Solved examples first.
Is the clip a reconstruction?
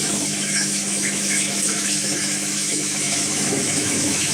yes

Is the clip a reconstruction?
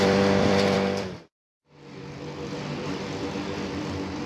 yes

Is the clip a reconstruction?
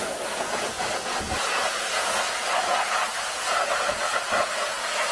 yes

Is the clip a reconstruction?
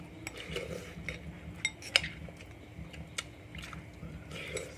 no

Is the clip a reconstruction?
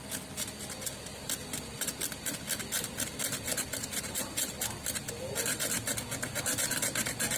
no